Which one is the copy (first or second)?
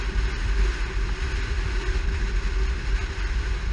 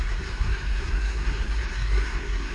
second